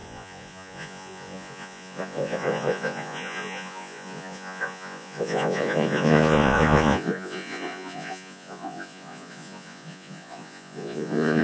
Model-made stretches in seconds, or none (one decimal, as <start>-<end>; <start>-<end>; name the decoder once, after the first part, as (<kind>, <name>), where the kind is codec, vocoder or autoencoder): 0.0-11.4 (vocoder, Vocos)